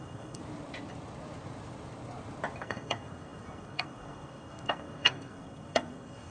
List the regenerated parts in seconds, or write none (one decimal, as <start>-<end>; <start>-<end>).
0.0-0.4; 2.6-6.3